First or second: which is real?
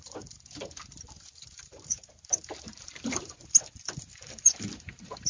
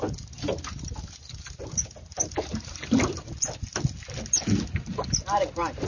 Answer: second